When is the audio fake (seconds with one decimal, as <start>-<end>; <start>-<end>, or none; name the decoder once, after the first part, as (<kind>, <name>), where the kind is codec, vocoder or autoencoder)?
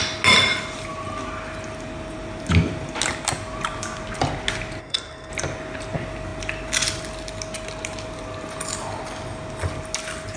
4.8-5.3 (codec, SNAC)